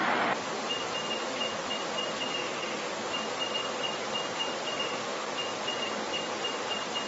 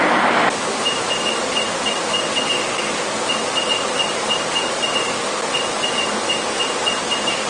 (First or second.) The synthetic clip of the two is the first